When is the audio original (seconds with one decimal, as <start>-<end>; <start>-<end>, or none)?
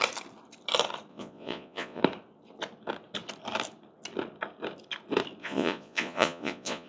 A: 0.0-1.1; 2.0-5.4